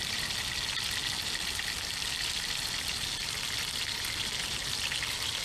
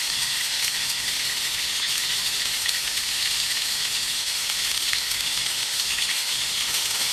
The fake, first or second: second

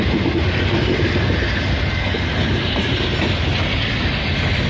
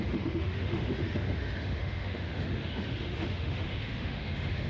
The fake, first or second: second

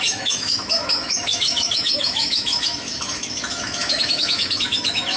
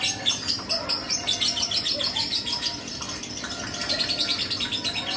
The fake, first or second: first